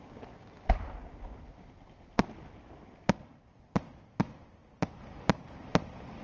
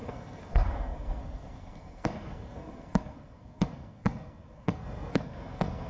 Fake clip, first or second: second